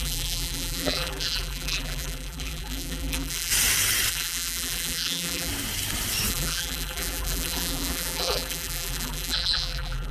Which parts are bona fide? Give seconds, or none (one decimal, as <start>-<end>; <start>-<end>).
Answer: 3.5-4.1; 5.5-6.3